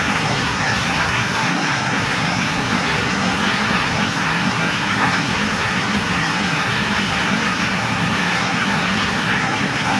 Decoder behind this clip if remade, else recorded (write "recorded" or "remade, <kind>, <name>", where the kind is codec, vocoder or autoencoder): remade, codec, SNAC